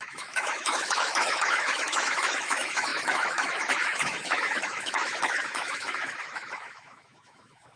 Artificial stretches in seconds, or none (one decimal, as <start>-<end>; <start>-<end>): 0.0-7.8